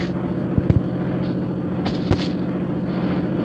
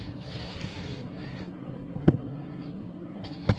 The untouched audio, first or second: first